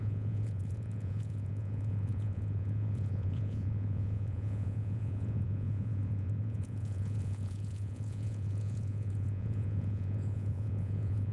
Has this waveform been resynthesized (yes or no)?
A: yes